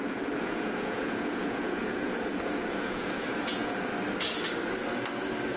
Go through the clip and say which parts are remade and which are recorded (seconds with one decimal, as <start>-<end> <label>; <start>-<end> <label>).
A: 0.0-3.9 remade; 3.9-5.6 recorded

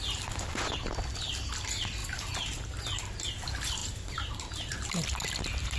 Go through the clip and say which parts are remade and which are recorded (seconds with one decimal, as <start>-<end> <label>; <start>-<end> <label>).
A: 0.0-2.0 recorded; 2.0-3.0 remade; 3.0-3.8 recorded; 3.8-4.4 remade; 4.4-5.8 recorded

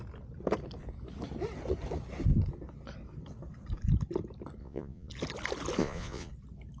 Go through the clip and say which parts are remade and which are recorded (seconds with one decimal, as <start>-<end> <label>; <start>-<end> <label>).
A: 0.0-4.6 recorded; 4.6-5.1 remade; 5.1-5.8 recorded; 5.8-6.3 remade; 6.3-6.8 recorded

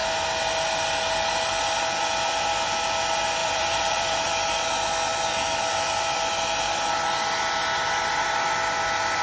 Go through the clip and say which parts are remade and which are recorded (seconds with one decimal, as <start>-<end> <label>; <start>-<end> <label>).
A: 0.0-3.4 recorded; 3.4-4.3 remade; 4.3-9.2 recorded

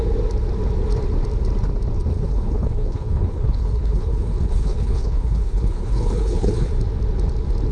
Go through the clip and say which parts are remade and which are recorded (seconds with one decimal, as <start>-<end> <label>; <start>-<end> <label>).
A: 0.0-2.1 recorded; 2.1-6.7 remade; 6.7-7.7 recorded

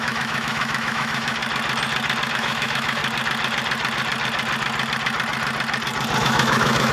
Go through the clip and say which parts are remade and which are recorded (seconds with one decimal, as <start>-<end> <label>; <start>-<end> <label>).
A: 0.0-1.4 remade; 1.4-2.3 recorded; 2.3-3.0 remade; 3.0-6.2 recorded; 6.2-6.9 remade